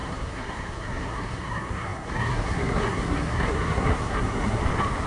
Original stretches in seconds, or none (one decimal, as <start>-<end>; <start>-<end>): 4.6-5.1